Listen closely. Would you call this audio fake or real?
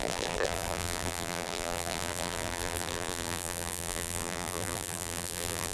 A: fake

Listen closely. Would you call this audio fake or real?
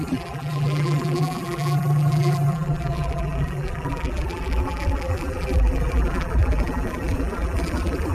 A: fake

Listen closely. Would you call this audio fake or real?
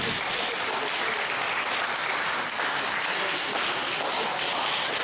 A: real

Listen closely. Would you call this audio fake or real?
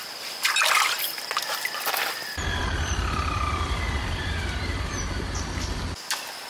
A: fake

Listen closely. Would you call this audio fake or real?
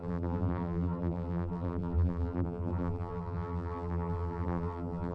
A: fake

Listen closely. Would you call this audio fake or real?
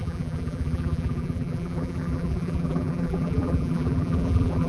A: fake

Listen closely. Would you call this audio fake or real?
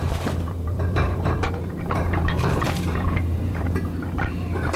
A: fake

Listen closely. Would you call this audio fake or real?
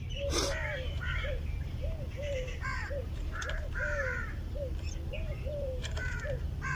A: fake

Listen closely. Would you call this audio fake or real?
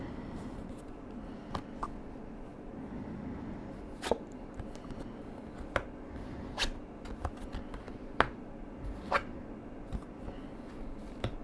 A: real